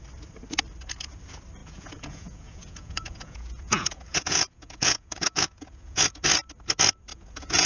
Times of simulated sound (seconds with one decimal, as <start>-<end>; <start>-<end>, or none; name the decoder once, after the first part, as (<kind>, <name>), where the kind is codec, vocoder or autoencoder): 1.6-6.1 (vocoder, Vocos); 7.1-7.7